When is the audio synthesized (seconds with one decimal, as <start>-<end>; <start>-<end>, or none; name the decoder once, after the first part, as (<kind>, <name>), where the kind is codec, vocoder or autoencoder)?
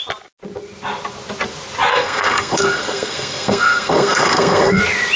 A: 1.9-4.8 (codec, SNAC)